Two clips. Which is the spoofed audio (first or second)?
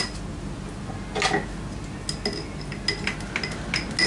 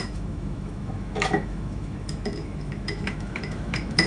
second